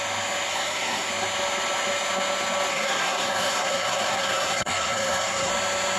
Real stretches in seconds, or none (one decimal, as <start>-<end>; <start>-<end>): 0.0-0.5; 1.1-2.7; 5.5-6.0